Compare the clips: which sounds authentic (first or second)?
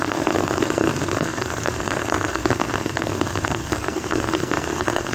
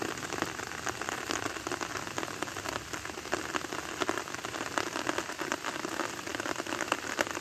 second